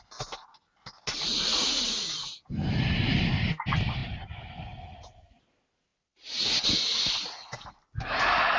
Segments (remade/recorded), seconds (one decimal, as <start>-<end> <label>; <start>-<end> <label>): 0.0-8.6 recorded